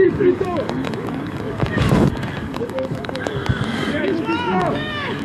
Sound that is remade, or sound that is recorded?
remade